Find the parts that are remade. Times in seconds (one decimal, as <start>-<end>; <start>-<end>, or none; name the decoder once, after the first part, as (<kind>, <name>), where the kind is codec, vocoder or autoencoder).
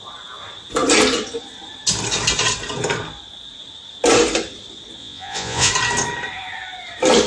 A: 5.0-5.7 (vocoder, Vocos)